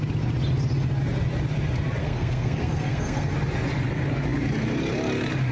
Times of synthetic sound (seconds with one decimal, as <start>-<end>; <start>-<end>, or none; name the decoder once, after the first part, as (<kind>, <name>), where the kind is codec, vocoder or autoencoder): 2.0-3.3 (codec, SNAC)